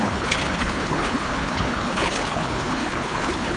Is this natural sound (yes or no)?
no